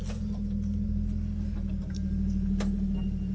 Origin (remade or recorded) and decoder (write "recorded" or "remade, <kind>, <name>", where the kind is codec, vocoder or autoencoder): recorded